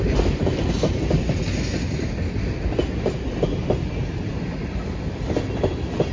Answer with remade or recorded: recorded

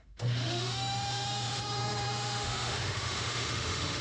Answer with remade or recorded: remade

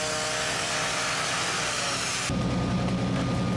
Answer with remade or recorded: recorded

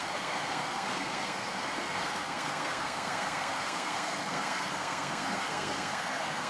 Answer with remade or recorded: remade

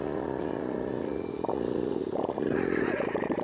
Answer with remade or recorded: remade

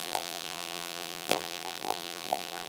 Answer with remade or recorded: remade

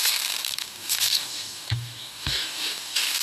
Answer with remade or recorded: remade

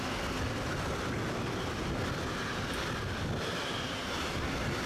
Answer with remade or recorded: recorded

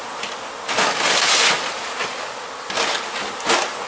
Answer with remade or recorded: recorded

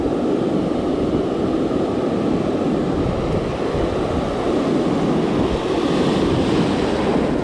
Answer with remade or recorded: recorded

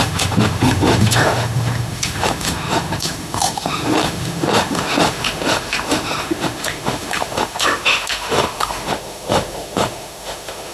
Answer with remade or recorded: remade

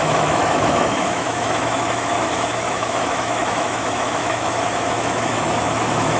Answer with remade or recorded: remade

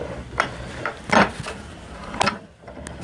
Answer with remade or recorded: recorded